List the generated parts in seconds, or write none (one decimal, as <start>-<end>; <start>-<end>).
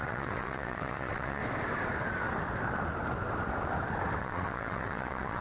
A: 0.0-1.4; 4.2-5.4